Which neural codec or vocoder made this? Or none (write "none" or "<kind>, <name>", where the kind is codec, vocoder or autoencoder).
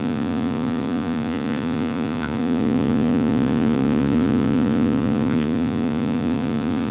vocoder, Vocos